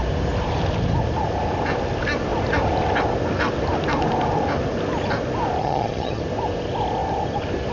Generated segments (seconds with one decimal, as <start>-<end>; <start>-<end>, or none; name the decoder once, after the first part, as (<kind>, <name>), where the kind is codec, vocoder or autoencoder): 5.6-6.2 (vocoder, HiFi-GAN)